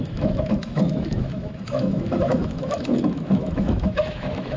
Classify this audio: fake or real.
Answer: fake